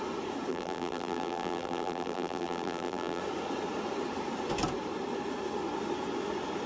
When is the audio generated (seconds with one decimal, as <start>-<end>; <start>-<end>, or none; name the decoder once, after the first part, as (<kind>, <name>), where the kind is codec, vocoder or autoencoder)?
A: 0.5-3.2 (vocoder, BigVGAN v2)